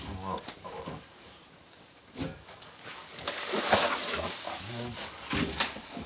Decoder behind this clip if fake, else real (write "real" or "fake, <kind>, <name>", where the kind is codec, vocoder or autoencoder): fake, codec, DAC